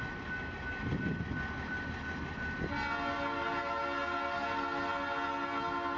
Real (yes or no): yes